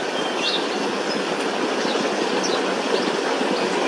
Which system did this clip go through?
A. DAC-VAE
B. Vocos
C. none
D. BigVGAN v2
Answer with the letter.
C